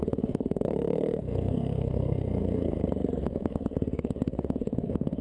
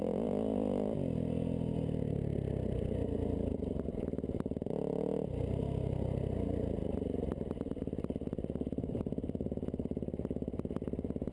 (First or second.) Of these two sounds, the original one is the second